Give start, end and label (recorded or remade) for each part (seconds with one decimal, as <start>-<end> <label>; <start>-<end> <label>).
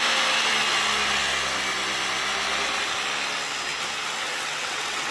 0.0-4.2 recorded; 4.2-5.1 remade